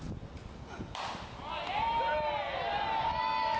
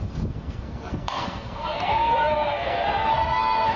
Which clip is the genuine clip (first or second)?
first